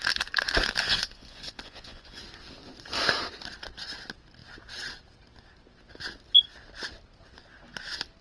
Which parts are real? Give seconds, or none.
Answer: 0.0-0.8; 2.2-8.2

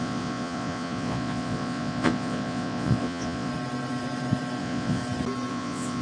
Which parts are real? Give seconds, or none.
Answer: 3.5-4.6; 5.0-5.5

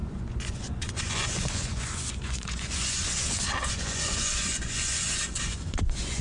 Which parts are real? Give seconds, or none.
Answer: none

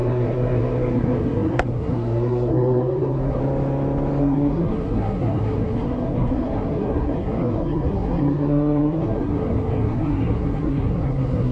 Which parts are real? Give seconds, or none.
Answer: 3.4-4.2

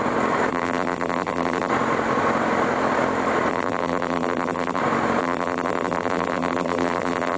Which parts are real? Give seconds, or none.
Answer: 0.0-0.5; 1.7-3.5; 4.8-5.2